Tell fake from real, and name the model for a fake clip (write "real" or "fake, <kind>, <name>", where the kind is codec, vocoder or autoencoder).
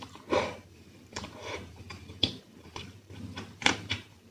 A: fake, vocoder, BigVGAN v2